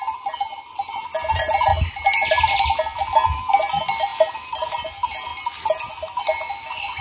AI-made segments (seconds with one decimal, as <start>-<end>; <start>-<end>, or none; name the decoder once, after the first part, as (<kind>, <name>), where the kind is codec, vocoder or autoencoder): none